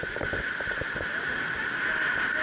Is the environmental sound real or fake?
real